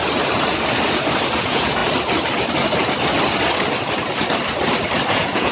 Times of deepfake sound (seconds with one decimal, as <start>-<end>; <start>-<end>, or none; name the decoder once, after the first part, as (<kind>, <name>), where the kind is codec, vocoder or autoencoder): 1.4-1.8 (vocoder, Vocos); 5.1-5.5